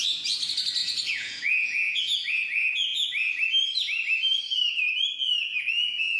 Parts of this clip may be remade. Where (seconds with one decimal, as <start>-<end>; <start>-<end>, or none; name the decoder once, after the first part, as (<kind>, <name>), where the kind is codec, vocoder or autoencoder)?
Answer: 0.8-2.0 (vocoder, Vocos); 5.5-6.2